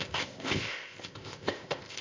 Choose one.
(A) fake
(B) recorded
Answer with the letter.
A